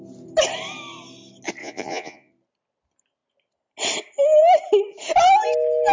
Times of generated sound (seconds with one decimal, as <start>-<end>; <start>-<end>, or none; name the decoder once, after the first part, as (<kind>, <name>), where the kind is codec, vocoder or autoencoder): 1.6-2.3 (vocoder, Vocos)